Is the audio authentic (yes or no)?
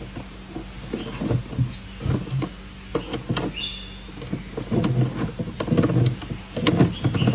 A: yes